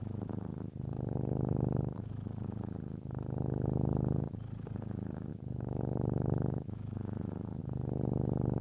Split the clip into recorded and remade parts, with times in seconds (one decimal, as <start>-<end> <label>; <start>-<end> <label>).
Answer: 0.0-5.3 recorded; 5.3-7.6 remade; 7.6-8.6 recorded